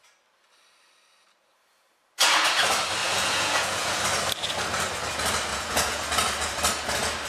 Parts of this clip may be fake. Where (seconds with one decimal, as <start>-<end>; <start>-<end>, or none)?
3.0-4.0; 5.5-6.0